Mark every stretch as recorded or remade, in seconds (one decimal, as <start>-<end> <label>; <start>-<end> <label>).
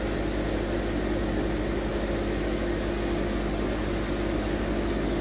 0.0-5.2 recorded